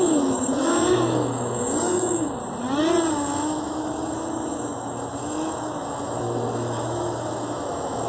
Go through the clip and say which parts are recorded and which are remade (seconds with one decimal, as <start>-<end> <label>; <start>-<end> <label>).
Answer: 0.0-2.4 remade; 2.4-3.1 recorded; 3.1-8.1 remade